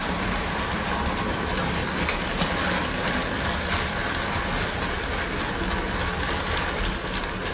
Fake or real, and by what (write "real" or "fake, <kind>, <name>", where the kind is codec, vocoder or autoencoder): real